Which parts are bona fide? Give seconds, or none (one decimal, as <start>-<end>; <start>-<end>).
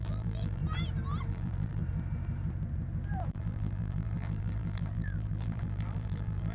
0.6-1.3; 1.8-3.3